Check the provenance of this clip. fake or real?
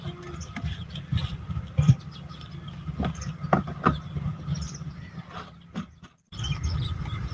real